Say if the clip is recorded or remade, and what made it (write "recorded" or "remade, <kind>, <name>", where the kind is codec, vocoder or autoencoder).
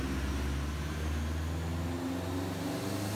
recorded